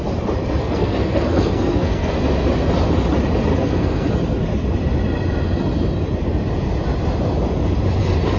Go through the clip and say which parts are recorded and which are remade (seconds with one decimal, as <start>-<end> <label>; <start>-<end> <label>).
0.0-0.6 recorded; 0.6-2.1 remade; 2.1-3.5 recorded; 3.5-4.1 remade; 4.1-8.4 recorded